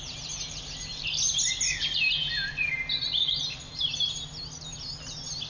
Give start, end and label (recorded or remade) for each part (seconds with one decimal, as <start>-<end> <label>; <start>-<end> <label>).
0.0-5.5 recorded